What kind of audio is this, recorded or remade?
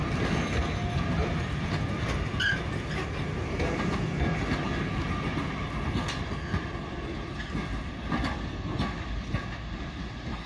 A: recorded